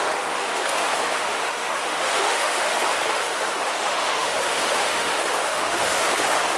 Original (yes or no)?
no